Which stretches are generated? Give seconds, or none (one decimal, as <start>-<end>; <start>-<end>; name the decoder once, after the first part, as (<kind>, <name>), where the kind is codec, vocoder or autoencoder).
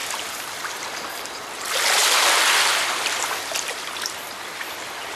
0.0-0.8 (vocoder, BigVGAN v2); 2.7-5.2